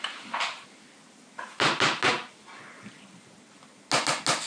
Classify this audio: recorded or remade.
recorded